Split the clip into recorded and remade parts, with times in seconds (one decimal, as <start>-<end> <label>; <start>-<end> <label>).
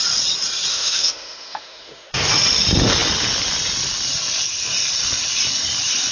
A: 0.0-0.7 recorded; 0.7-2.1 remade; 2.1-6.1 recorded